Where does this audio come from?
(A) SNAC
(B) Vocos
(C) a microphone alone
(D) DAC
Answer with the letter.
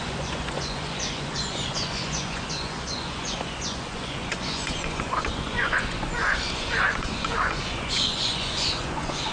B